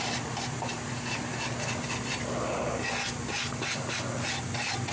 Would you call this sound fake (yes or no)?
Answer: no